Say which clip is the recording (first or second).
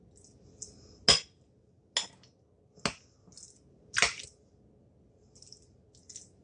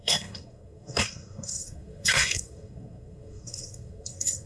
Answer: first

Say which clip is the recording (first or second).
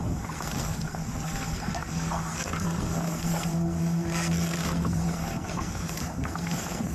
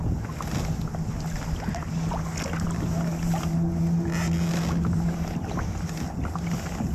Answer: second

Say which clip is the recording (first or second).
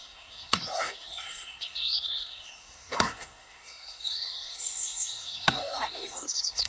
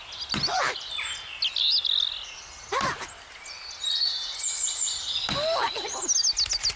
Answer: second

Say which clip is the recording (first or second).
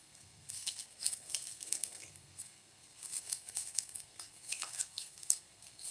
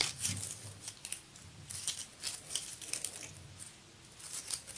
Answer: second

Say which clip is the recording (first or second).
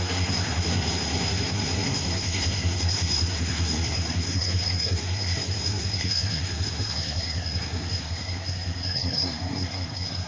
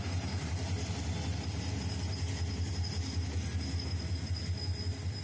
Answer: second